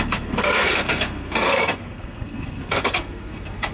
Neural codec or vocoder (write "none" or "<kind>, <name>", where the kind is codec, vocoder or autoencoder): codec, SNAC